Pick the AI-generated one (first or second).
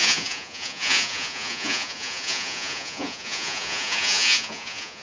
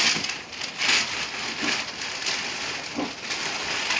first